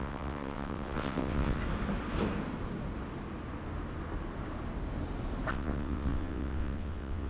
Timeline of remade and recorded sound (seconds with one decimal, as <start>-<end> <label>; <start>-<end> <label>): 0.0-1.6 remade; 1.6-5.5 recorded; 5.5-7.3 remade